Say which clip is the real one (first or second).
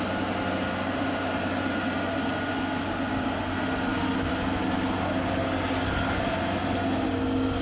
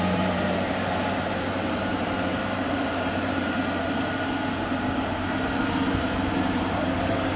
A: first